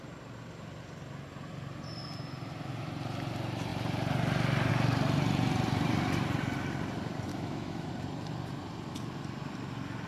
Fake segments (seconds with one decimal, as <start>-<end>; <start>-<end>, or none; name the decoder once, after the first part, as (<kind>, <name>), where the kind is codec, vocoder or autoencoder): 7.3-7.9 (autoencoder, DAC-VAE)